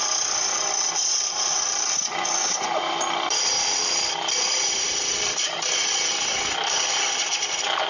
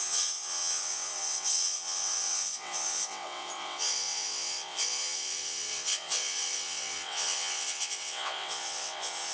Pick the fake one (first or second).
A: second